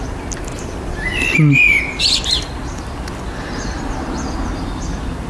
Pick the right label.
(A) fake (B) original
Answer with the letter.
B